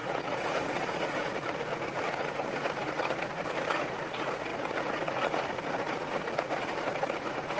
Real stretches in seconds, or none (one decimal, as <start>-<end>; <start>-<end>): none